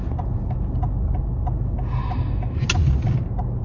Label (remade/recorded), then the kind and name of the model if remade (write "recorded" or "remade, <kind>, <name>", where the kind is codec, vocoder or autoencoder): recorded